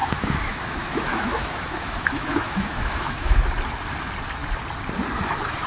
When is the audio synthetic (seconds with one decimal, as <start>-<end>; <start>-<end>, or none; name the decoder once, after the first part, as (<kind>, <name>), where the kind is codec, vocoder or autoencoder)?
0.0-3.4 (autoencoder, DAC-VAE)